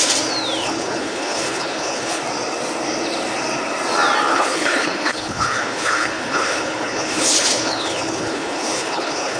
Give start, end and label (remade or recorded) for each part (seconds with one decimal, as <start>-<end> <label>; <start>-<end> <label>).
0.0-0.6 recorded; 0.6-2.2 remade; 2.2-4.3 recorded; 4.3-9.4 remade